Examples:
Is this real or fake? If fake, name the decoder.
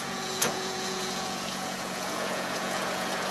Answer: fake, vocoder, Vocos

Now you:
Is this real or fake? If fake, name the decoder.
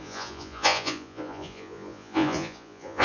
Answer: fake, vocoder, Vocos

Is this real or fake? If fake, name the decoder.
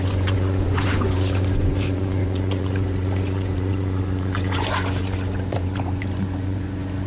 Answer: fake, vocoder, Vocos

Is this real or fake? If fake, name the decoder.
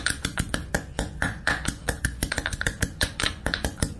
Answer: fake, vocoder, Vocos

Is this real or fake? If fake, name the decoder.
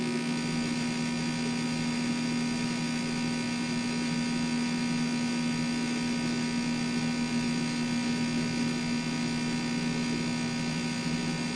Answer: real